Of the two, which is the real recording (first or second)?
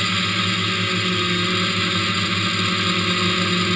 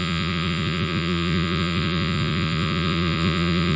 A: first